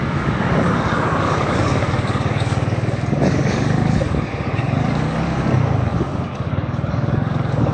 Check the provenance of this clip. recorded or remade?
remade